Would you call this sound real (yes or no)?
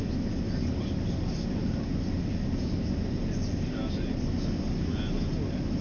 yes